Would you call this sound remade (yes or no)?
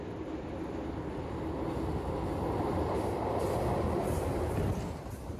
no